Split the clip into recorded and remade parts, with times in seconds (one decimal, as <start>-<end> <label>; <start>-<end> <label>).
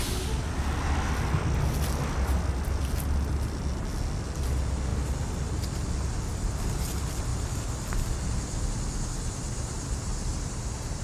0.0-11.0 recorded